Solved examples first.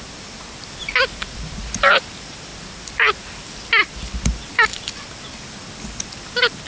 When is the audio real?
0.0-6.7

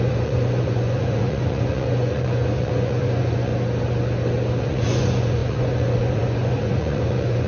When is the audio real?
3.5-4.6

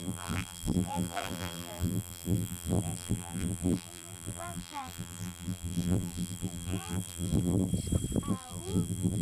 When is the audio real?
7.7-8.3

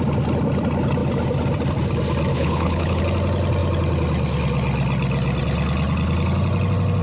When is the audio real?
0.0-2.3; 3.0-7.0

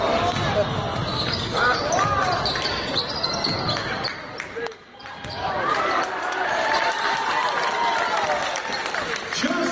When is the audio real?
0.0-0.9; 1.6-2.2; 4.0-5.7; 7.3-9.7